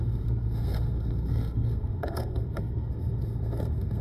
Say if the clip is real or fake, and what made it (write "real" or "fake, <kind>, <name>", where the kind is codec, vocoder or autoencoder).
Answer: fake, codec, SNAC